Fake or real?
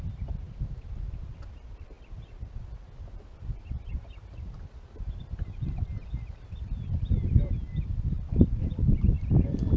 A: real